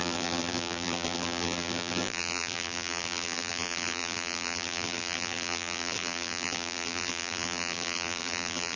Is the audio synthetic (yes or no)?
yes